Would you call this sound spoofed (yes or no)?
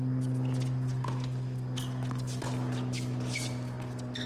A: no